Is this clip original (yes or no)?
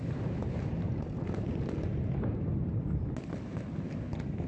yes